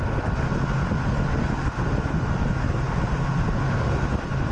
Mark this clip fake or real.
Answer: real